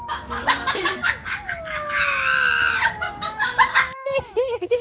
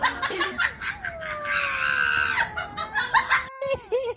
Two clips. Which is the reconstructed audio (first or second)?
first